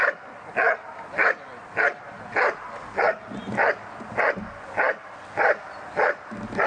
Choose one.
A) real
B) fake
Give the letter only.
A